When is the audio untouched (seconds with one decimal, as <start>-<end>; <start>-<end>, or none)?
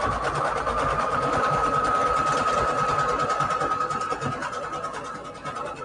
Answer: 0.0-5.8